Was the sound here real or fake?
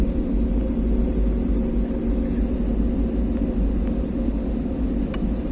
real